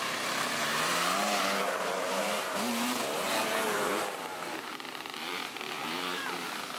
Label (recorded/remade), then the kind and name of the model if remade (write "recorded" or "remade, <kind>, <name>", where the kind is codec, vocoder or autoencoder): remade, vocoder, BigVGAN v2